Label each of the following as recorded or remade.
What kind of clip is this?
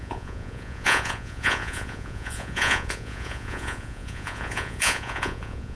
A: remade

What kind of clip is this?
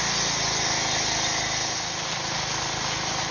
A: recorded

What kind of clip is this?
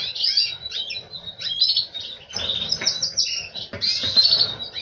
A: recorded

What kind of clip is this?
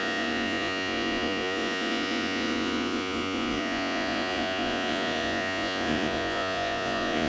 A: remade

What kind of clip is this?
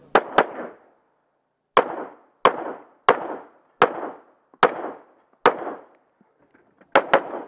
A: recorded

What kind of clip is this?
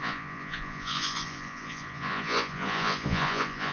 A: remade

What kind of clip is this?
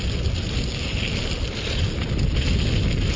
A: recorded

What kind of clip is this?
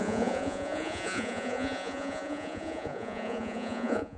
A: remade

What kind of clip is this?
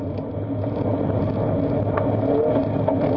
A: recorded